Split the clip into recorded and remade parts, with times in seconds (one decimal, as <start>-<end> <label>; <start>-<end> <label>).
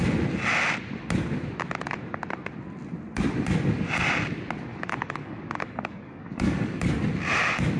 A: 0.0-4.7 recorded; 4.7-6.8 remade; 6.8-7.8 recorded